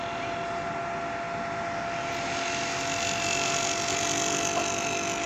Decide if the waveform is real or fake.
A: real